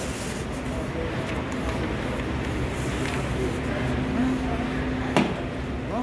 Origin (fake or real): real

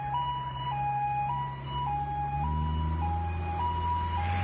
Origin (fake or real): real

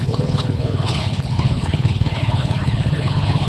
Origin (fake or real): fake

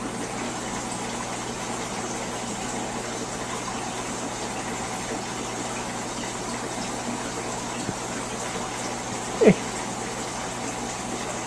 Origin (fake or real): real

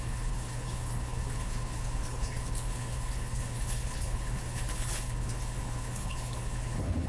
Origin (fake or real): fake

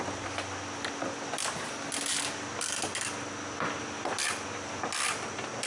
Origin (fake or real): real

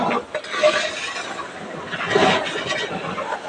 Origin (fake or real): real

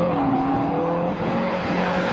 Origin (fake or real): fake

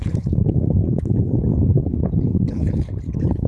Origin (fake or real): fake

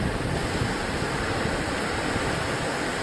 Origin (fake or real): real